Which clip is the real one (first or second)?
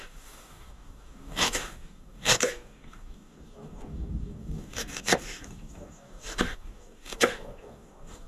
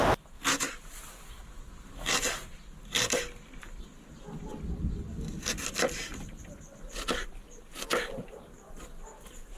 second